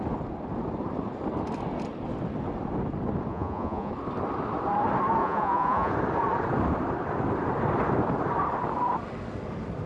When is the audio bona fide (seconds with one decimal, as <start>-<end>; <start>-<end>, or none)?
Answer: 0.0-3.3; 3.9-5.2; 5.9-9.9